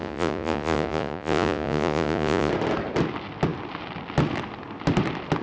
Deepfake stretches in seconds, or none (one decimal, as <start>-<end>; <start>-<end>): 0.0-2.5